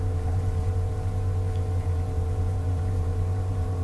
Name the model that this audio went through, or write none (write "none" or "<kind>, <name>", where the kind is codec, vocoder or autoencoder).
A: vocoder, BigVGAN v2